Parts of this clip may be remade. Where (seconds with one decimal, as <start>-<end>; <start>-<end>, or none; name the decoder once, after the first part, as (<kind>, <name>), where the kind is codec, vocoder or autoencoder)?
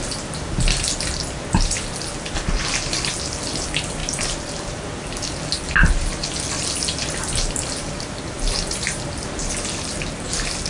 none